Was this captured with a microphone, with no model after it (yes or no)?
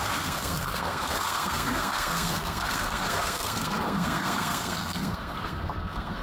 no